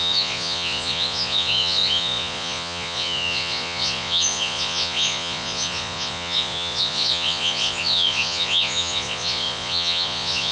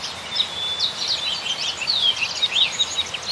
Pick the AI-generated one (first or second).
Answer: first